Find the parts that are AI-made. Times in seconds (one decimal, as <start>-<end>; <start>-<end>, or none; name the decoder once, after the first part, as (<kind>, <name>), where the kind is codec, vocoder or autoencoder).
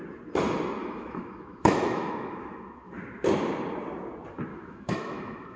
0.8-2.9 (autoencoder, DAC-VAE); 4.5-5.6